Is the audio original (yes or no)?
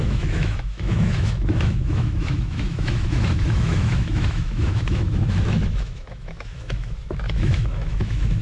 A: no